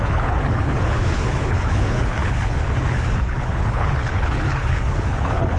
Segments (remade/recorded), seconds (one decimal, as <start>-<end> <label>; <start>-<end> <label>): 0.0-5.6 remade